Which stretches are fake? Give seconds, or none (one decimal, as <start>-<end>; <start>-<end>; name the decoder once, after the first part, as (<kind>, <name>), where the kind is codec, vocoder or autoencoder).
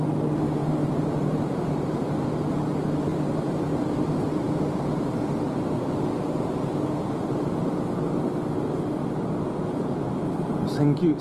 0.6-2.5 (vocoder, BigVGAN v2); 3.1-7.3